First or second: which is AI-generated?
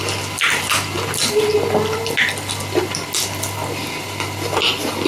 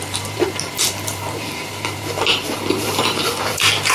second